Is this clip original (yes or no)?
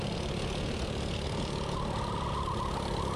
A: yes